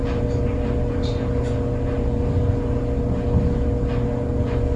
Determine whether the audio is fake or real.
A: real